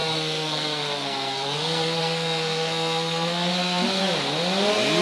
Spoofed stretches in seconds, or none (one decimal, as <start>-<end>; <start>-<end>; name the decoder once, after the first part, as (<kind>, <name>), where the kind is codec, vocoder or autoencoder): 0.0-4.0 (codec, SNAC)

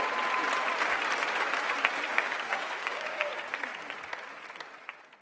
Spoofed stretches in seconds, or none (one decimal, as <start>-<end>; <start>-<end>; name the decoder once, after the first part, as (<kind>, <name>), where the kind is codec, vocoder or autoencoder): 2.1-3.3 (codec, DAC)

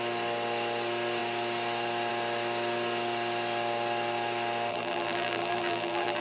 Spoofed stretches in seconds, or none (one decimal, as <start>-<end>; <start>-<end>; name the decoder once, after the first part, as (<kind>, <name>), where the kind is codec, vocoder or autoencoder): 4.7-6.2 (vocoder, BigVGAN v2)